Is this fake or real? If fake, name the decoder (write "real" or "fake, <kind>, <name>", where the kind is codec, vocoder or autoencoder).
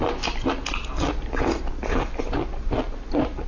real